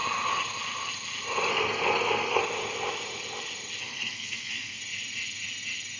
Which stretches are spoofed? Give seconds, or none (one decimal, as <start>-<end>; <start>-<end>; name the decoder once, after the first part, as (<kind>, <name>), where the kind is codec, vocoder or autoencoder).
1.5-2.4 (codec, SNAC); 3.8-4.8